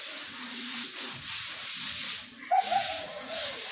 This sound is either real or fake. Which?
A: fake